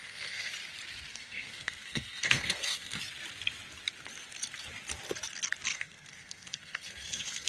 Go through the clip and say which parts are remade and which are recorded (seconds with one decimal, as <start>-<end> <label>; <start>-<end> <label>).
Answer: 0.0-0.5 remade; 0.5-1.1 recorded; 1.1-3.0 remade; 3.0-5.7 recorded; 5.7-7.5 remade